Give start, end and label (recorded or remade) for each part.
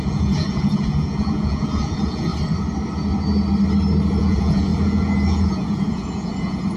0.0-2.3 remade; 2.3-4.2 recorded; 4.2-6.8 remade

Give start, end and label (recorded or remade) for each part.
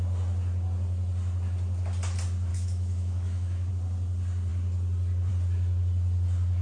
0.0-2.5 recorded; 2.5-3.7 remade; 3.7-6.6 recorded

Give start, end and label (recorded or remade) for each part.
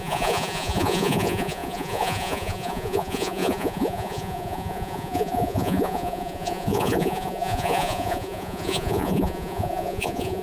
0.0-10.4 remade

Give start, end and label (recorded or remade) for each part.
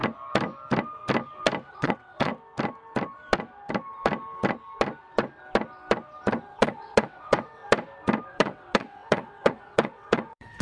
0.0-1.7 recorded; 1.7-2.3 remade; 2.3-6.6 recorded; 6.6-7.6 remade; 7.6-8.3 recorded; 8.3-10.6 remade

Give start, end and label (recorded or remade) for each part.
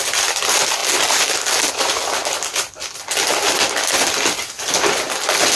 0.0-0.8 remade; 0.8-1.7 recorded; 1.7-2.2 remade; 2.2-5.6 recorded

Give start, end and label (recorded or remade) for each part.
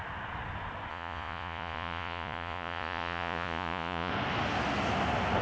0.0-0.9 recorded; 0.9-4.1 remade; 4.1-5.4 recorded